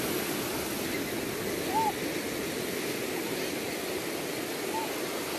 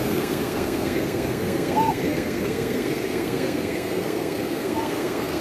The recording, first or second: first